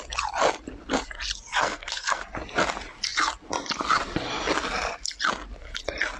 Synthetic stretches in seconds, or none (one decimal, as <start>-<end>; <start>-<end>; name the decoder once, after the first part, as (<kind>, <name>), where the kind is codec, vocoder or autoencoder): 1.5-2.2 (codec, SNAC)